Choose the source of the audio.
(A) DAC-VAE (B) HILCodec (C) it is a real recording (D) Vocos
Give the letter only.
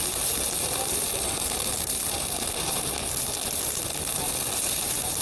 C